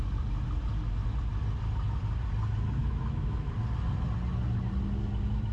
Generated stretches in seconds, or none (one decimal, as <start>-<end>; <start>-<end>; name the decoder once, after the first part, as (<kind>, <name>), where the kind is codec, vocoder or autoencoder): 2.8-3.5 (autoencoder, DAC-VAE)